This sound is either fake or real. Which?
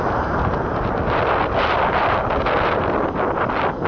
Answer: real